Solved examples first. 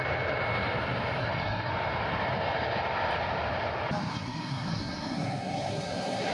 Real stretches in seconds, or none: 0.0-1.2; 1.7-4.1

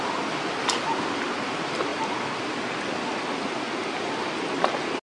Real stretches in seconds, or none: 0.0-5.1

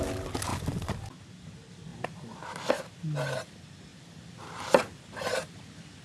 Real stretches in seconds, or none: 0.0-1.9; 2.7-6.0

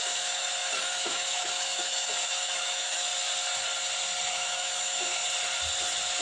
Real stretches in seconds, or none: 3.1-4.3; 5.2-6.2

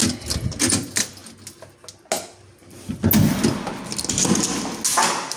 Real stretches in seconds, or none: 0.0-5.4

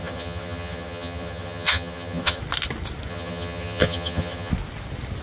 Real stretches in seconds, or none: 2.4-3.1; 4.5-5.2

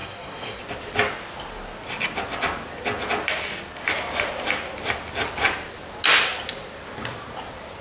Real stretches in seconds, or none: 0.6-7.8